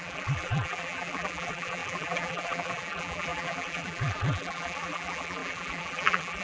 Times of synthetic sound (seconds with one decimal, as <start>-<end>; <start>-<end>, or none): 0.0-6.4